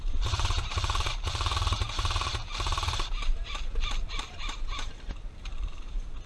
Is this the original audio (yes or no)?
no